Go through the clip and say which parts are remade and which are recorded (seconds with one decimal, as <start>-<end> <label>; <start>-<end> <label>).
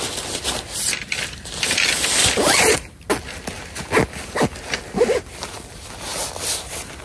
0.0-2.2 recorded; 2.2-3.1 remade; 3.1-7.0 recorded